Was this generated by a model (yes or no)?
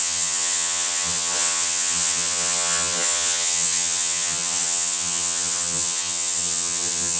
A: yes